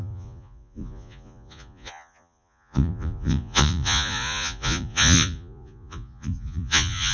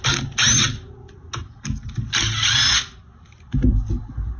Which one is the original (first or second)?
second